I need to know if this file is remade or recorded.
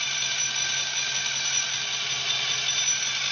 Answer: recorded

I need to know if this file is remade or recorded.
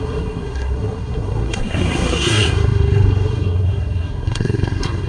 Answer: remade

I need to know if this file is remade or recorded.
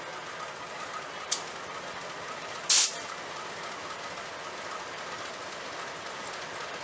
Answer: recorded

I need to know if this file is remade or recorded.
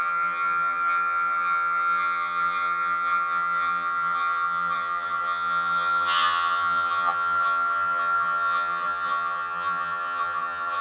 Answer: remade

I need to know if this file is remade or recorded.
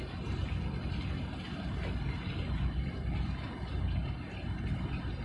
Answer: recorded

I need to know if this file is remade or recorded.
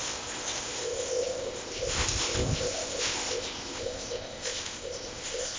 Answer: remade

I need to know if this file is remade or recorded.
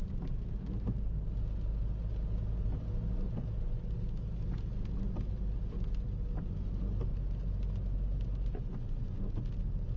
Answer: recorded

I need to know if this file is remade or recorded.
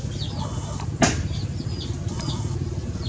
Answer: recorded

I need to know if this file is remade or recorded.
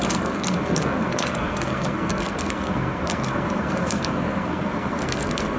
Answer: remade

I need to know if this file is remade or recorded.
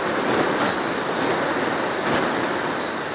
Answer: recorded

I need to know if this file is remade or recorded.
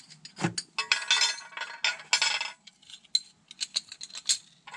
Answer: recorded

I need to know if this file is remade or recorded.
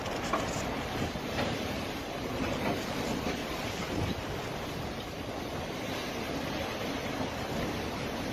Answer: recorded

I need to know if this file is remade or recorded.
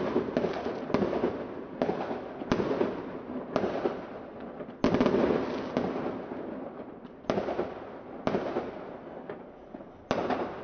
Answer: recorded